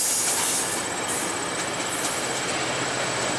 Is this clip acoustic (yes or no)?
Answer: yes